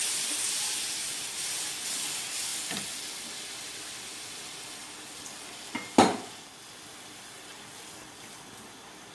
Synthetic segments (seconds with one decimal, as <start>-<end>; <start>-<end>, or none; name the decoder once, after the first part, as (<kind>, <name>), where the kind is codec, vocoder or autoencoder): none